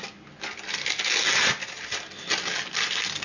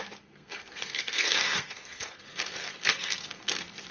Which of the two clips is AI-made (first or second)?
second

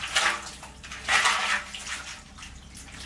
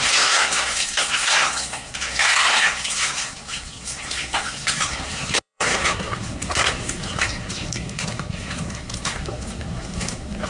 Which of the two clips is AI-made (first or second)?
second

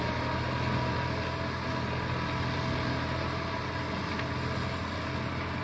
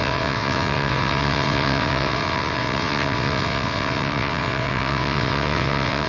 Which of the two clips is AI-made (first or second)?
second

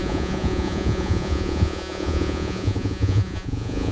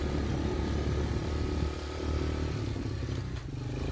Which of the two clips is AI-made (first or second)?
first